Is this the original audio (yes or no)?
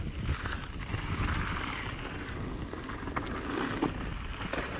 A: yes